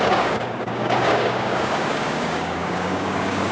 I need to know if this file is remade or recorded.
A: remade